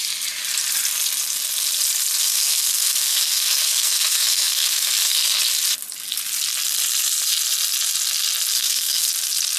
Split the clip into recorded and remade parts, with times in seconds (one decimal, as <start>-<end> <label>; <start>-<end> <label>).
0.0-2.2 recorded; 2.2-5.4 remade; 5.4-8.5 recorded; 8.5-9.1 remade; 9.1-9.6 recorded